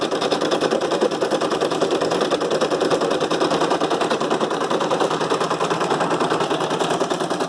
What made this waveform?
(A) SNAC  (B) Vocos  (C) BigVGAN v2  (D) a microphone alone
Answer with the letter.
C